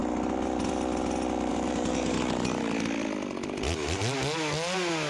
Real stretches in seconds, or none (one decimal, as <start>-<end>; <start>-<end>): 0.0-1.5; 2.6-5.1